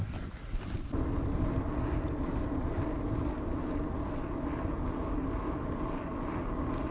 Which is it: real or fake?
real